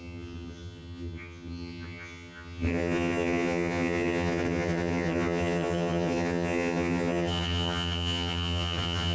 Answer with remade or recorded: remade